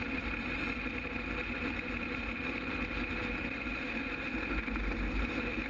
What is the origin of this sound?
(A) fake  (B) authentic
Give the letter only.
B